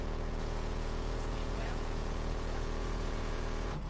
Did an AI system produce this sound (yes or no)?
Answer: yes